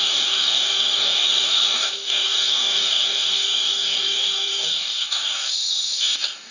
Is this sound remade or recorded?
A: remade